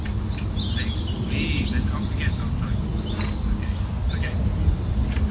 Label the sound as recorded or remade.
recorded